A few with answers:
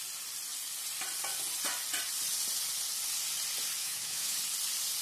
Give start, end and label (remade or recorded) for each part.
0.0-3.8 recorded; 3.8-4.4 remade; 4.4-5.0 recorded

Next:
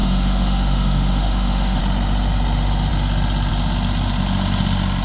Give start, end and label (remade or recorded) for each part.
0.0-1.8 remade; 1.8-5.0 recorded

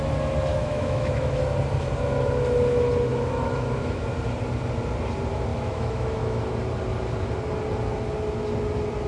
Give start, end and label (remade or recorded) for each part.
0.0-0.5 recorded; 0.5-1.4 remade; 1.4-3.1 recorded; 3.1-4.0 remade; 4.0-5.5 recorded; 5.5-6.5 remade; 6.5-9.1 recorded